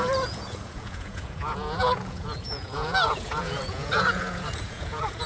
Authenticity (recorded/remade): remade